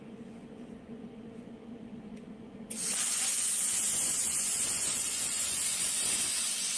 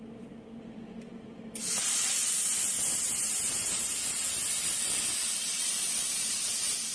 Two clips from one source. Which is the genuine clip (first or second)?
second